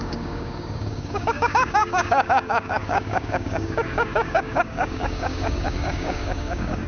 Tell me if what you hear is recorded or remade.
remade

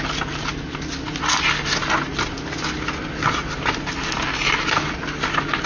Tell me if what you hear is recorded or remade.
recorded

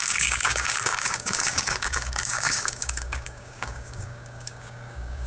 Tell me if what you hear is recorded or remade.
remade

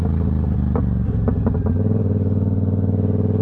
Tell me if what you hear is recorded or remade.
recorded